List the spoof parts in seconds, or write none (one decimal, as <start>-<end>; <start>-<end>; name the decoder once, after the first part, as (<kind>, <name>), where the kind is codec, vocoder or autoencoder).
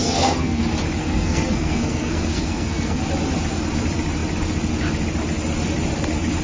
0.0-0.6 (codec, SNAC); 1.0-3.0